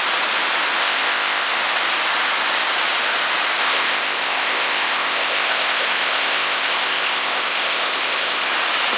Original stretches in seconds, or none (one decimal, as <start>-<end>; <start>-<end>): 0.0-0.8; 1.5-3.6; 8.5-9.0